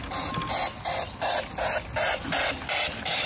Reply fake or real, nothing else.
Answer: real